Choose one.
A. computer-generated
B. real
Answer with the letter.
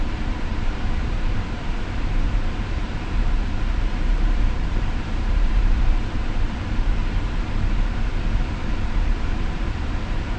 A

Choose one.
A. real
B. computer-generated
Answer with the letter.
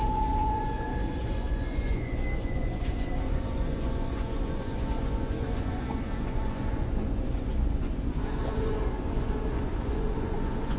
B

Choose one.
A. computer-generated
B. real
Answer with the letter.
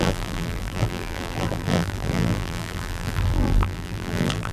A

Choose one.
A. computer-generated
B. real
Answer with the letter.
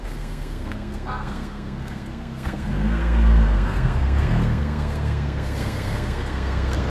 A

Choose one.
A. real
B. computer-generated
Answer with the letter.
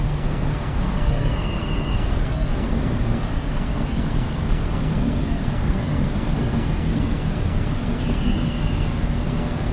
B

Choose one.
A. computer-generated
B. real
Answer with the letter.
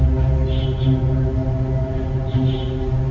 B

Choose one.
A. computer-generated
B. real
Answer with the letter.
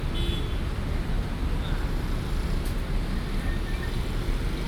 B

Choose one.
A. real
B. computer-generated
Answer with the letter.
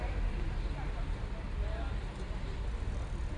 A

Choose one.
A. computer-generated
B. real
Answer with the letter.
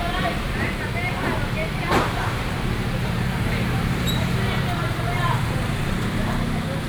A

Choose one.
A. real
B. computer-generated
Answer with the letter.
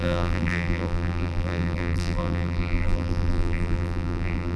B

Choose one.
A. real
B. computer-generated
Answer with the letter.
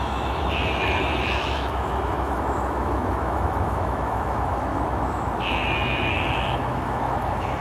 B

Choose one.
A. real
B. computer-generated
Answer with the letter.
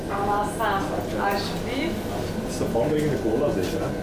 A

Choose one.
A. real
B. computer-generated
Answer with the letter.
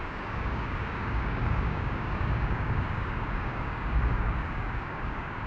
B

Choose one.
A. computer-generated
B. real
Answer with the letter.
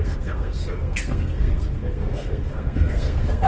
A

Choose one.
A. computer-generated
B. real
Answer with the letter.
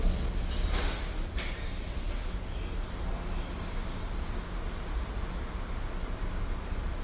B